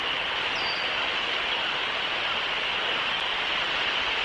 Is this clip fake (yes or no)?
no